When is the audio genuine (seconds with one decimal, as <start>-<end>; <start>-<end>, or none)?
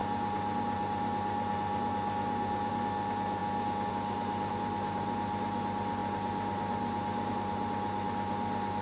0.0-8.8